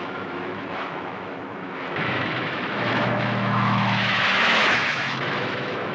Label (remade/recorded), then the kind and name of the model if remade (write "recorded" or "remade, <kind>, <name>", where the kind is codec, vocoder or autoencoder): remade, autoencoder, DAC-VAE